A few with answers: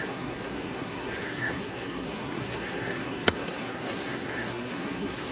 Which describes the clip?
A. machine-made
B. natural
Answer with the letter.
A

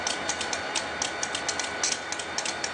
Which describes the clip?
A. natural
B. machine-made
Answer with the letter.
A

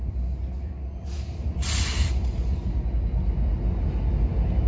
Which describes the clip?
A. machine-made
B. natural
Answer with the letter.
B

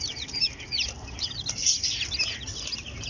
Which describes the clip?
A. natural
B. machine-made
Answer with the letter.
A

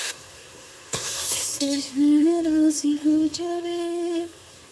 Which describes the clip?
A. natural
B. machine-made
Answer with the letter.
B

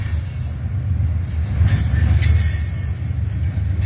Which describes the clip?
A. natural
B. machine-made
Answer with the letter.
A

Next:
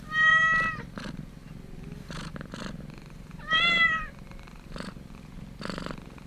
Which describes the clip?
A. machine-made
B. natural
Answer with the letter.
B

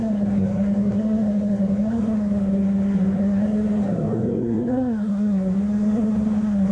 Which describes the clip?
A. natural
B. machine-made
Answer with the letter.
B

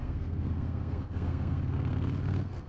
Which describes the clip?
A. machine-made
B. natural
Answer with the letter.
A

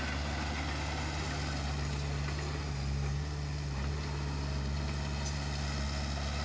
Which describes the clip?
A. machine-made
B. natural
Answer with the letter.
B